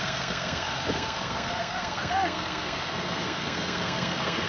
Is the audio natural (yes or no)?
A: no